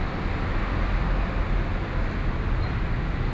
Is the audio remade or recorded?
recorded